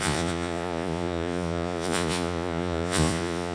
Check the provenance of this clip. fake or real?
fake